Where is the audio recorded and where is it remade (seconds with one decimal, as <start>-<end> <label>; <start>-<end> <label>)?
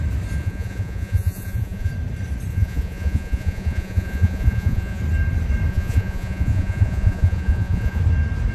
0.0-0.4 recorded; 0.4-1.9 remade; 1.9-2.5 recorded; 2.5-5.0 remade; 5.0-5.7 recorded; 5.7-8.0 remade; 8.0-8.5 recorded